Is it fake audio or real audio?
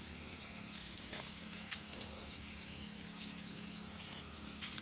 fake